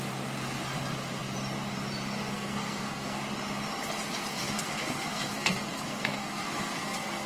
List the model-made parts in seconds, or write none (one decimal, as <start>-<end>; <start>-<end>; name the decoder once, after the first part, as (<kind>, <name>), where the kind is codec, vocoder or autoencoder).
2.3-3.2 (codec, SNAC); 4.3-7.3